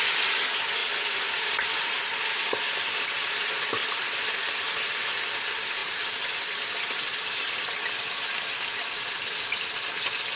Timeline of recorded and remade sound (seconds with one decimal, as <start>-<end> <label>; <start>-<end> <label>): 0.0-3.8 remade; 3.8-4.9 recorded; 4.9-10.4 remade